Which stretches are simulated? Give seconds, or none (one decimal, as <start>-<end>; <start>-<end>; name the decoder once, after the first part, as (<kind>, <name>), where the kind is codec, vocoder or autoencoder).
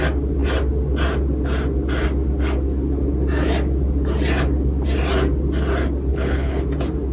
6.1-6.6 (codec, HILCodec)